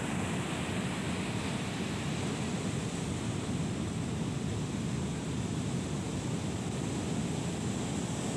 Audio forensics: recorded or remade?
recorded